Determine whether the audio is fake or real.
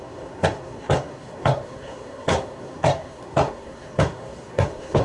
fake